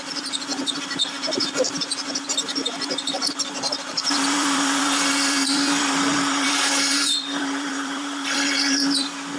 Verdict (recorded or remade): remade